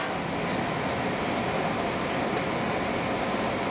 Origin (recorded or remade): recorded